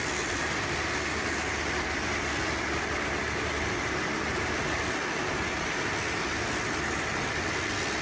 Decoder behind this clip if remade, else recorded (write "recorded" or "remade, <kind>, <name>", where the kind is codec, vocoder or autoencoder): recorded